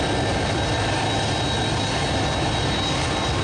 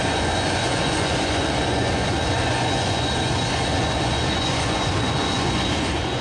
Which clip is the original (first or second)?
first